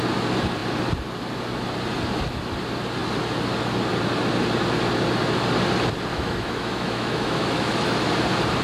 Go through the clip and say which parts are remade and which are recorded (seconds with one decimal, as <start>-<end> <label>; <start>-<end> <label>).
0.0-6.1 recorded; 6.1-8.1 remade; 8.1-8.6 recorded